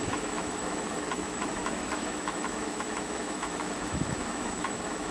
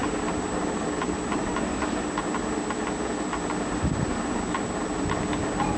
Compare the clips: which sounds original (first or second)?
second